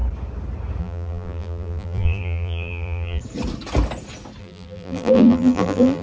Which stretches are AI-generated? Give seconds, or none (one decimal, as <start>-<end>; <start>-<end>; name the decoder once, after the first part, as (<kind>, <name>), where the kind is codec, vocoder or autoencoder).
0.8-3.2 (vocoder, BigVGAN v2); 4.4-6.0